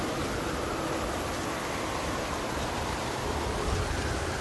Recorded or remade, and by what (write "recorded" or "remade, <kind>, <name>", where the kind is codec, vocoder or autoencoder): recorded